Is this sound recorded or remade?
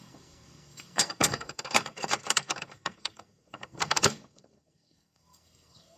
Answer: remade